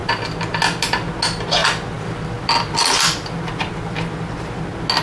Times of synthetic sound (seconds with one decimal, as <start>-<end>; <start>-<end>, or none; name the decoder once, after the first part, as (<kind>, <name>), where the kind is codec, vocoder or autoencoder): 1.6-3.7 (vocoder, BigVGAN v2)